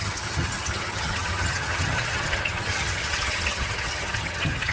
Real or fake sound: fake